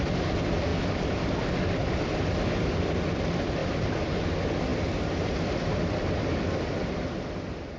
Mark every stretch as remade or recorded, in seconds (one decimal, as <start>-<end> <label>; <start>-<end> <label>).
0.0-0.7 recorded; 0.7-2.0 remade; 2.0-4.7 recorded; 4.7-6.1 remade; 6.1-7.8 recorded